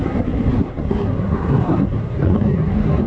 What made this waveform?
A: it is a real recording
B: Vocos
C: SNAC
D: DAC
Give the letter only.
C